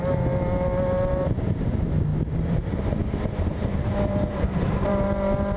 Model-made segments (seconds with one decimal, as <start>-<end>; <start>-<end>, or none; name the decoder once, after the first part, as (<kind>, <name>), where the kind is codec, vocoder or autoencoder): 0.0-2.1 (vocoder, BigVGAN v2); 3.6-5.6